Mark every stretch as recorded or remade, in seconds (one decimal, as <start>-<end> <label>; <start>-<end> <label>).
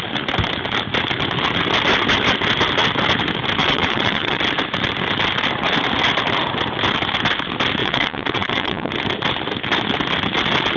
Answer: 0.0-3.6 recorded; 3.6-4.4 remade; 4.4-7.8 recorded; 7.8-8.9 remade; 8.9-10.8 recorded